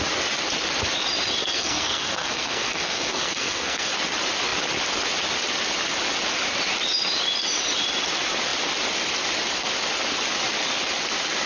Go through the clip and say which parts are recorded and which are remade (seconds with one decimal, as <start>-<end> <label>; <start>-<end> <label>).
0.0-1.4 recorded; 1.4-3.9 remade; 3.9-11.5 recorded